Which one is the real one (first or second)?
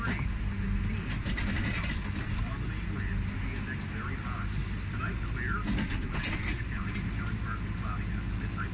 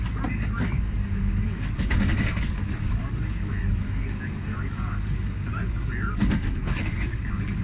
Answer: first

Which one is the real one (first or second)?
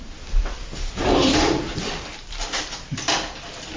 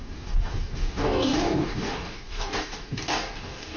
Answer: first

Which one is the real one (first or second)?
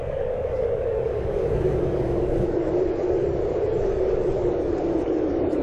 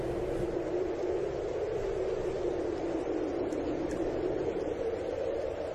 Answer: second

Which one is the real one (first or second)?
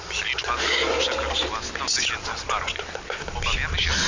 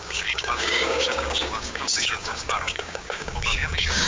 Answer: first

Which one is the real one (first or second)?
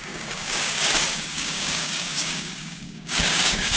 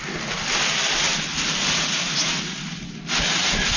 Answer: second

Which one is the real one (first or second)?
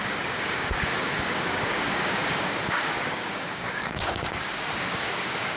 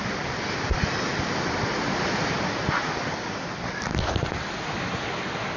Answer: second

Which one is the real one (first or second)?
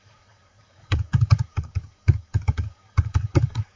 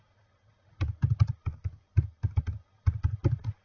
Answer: second